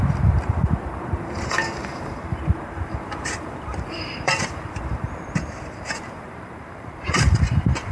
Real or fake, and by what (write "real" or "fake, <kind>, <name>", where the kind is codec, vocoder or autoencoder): fake, vocoder, BigVGAN v2